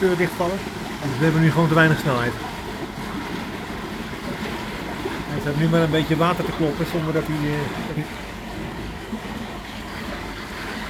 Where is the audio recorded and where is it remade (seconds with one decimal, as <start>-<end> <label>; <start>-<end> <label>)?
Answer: 0.0-1.1 remade; 1.1-5.3 recorded; 5.3-5.7 remade; 5.7-7.0 recorded; 7.0-10.9 remade